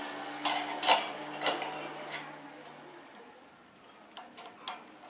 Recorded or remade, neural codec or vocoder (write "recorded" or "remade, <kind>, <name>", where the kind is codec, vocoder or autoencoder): recorded